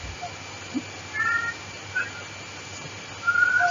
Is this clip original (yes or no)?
no